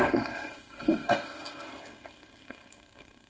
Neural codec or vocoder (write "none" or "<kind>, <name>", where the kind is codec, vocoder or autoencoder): codec, SNAC